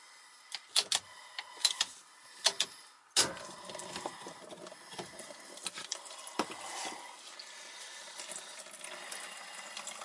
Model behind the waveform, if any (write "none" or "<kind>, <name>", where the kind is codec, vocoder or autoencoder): none